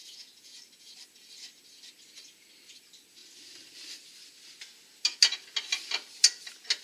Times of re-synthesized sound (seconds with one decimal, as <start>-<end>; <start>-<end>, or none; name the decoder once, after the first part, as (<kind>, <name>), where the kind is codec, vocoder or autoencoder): 0.0-0.6 (vocoder, Vocos)